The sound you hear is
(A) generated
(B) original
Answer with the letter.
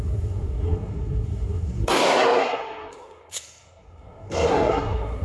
A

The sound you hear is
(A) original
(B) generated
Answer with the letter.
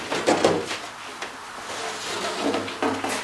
A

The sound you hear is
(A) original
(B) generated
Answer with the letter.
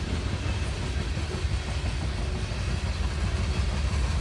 A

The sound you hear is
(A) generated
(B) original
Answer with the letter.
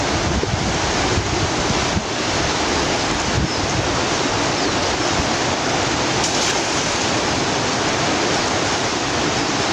B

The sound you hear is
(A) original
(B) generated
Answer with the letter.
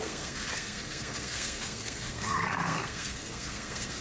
B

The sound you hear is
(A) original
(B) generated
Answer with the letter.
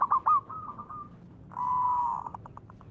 A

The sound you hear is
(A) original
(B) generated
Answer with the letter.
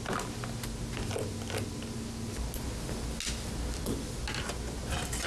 A